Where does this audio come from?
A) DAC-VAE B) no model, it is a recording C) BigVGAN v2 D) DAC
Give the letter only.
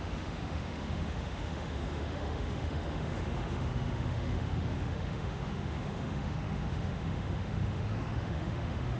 A